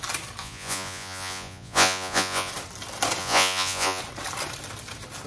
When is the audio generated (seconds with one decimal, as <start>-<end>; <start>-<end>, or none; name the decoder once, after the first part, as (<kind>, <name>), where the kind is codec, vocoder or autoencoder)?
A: 0.4-2.5 (vocoder, Vocos); 3.2-4.0